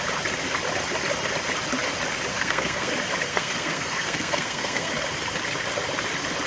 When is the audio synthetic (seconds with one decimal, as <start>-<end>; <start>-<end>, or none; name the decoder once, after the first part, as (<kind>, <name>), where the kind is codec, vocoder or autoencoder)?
2.3-2.9 (codec, SNAC); 3.3-4.9